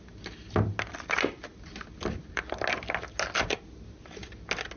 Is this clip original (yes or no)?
yes